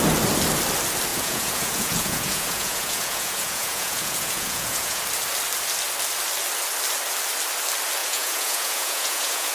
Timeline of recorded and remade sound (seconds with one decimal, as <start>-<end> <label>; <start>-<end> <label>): 0.0-1.1 recorded; 1.1-5.0 remade; 5.0-8.0 recorded; 8.0-9.5 remade